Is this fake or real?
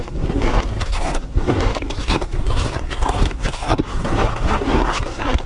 fake